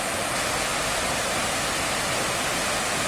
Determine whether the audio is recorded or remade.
recorded